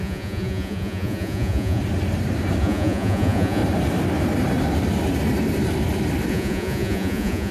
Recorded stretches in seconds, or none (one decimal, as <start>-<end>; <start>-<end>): 1.8-2.6; 3.6-6.3